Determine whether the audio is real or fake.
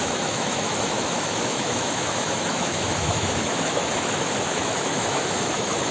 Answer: fake